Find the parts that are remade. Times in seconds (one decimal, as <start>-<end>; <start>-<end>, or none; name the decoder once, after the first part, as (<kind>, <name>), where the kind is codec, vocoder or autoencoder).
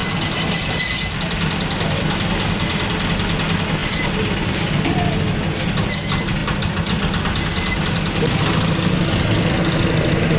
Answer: 3.8-4.8 (vocoder, BigVGAN v2)